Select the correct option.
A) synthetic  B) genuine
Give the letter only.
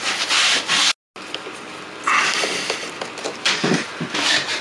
B